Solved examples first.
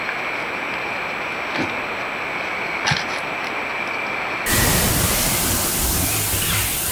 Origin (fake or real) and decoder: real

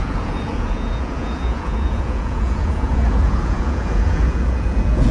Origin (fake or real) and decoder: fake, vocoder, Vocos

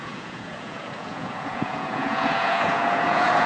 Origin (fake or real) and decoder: fake, vocoder, Vocos